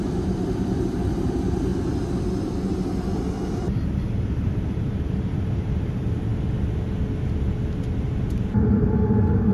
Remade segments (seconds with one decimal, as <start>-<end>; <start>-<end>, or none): 0.0-1.7; 4.3-6.3; 8.0-9.5